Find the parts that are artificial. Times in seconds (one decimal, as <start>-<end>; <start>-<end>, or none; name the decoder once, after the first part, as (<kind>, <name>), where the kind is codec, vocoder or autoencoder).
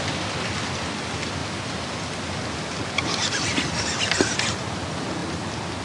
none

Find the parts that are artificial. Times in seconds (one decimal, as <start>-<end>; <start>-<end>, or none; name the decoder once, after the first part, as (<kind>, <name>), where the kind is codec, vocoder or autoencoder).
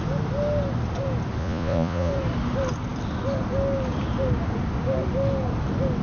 1.4-2.1 (vocoder, Vocos)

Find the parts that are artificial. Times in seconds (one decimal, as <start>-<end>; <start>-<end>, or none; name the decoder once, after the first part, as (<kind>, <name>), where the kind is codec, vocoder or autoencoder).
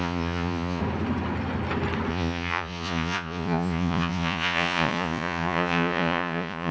0.0-0.8 (vocoder, Vocos); 2.1-6.7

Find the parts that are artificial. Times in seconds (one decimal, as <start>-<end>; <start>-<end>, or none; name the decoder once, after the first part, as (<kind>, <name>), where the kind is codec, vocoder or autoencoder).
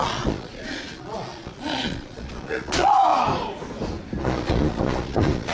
0.0-3.1 (vocoder, Vocos); 4.2-5.5